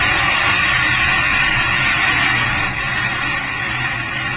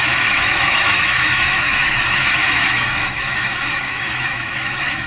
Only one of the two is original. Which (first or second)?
first